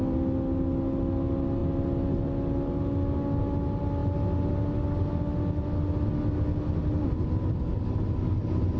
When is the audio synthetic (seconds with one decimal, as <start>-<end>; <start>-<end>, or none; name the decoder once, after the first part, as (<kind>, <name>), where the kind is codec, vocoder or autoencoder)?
none